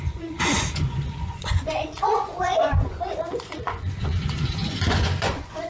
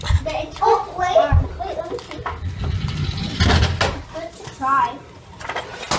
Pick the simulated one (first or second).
first